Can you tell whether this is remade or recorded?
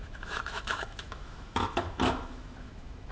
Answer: remade